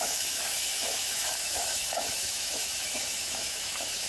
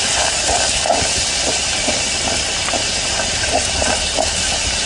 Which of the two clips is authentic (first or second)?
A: second